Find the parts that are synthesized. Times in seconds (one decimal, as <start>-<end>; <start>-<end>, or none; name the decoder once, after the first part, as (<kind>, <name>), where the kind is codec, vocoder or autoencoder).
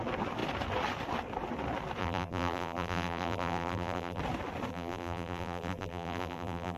2.0-4.2 (vocoder, BigVGAN v2); 4.7-6.8